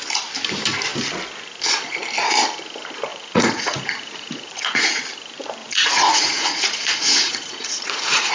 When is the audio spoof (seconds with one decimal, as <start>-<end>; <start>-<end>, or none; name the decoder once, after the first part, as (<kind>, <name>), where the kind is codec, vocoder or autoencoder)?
3.1-5.0 (vocoder, Vocos); 5.6-8.3